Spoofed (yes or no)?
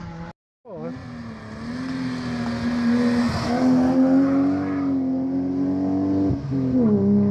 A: no